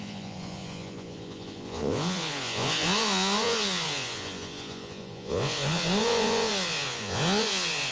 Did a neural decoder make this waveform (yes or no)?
yes